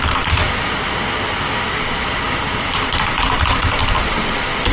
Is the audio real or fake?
real